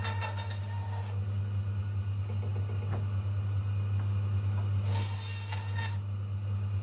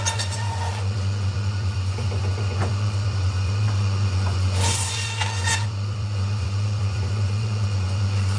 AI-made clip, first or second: second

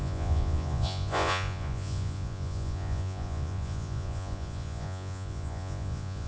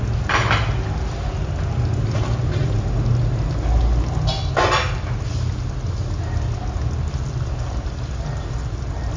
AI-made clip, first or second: first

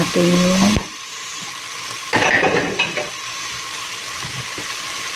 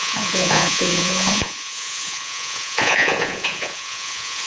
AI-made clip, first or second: second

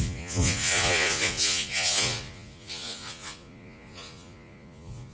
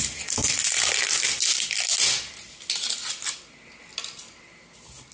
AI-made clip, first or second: first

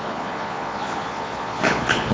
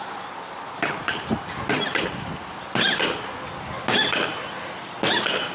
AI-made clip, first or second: first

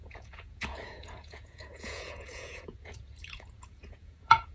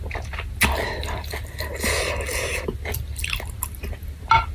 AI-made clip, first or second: first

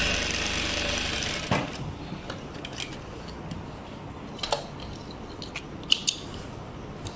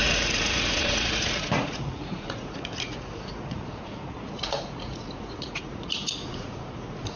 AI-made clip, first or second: second